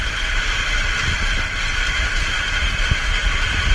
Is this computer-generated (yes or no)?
no